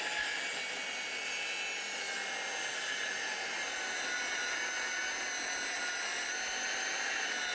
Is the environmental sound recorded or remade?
recorded